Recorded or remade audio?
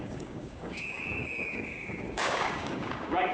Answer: remade